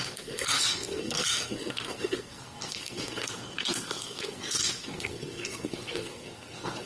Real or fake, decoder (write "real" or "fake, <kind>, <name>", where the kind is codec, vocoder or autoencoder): fake, codec, SNAC